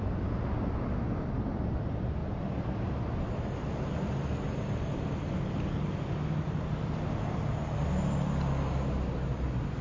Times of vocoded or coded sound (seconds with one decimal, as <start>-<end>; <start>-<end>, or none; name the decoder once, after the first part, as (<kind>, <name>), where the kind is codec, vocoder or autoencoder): none